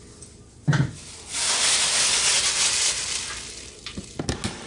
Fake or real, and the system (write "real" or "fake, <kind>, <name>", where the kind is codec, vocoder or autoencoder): real